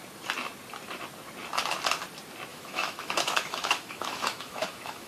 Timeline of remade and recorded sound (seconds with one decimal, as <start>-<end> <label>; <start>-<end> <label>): 0.0-2.5 recorded; 2.5-5.1 remade